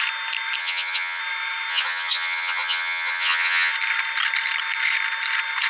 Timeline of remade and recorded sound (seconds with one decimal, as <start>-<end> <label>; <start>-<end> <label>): 0.0-0.6 recorded; 0.6-1.2 remade; 1.2-1.7 recorded; 1.7-3.7 remade; 3.7-5.7 recorded